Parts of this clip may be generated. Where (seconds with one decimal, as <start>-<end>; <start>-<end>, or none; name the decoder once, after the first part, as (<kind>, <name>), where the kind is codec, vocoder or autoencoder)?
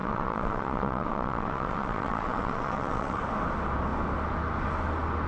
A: 0.0-3.2 (vocoder, WaveNeXt)